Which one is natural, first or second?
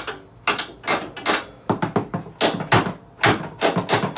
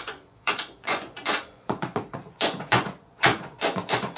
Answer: first